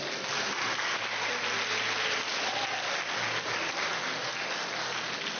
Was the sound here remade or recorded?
recorded